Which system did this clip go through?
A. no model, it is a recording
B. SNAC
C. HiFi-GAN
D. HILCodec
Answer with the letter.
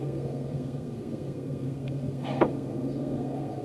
B